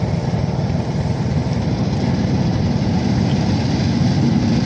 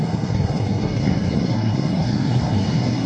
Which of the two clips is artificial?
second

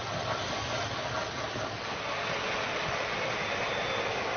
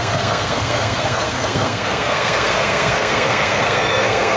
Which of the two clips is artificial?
second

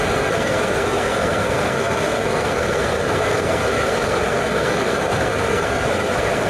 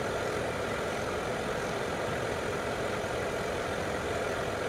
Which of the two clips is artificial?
first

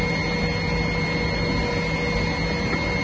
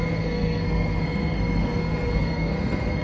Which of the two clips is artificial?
second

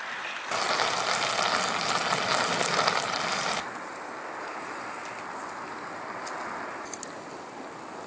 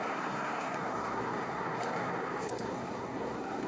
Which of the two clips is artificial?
second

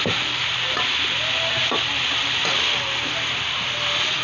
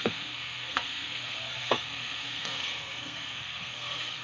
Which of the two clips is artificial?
second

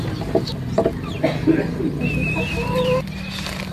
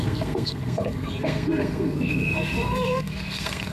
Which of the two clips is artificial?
second